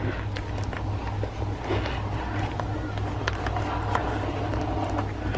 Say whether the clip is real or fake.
real